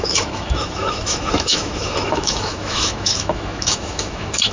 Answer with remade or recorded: remade